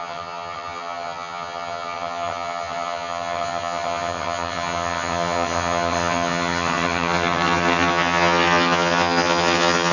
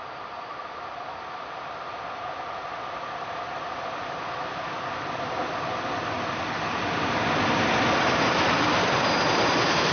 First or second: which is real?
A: second